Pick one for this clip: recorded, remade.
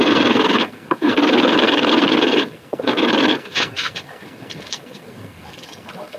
remade